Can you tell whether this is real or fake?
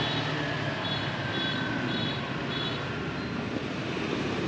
real